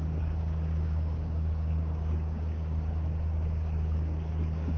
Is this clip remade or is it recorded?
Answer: remade